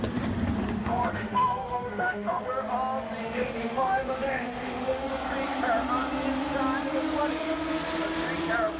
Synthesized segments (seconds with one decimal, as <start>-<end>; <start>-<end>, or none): 0.8-2.5; 3.2-5.1